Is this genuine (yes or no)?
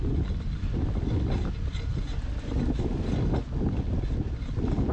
yes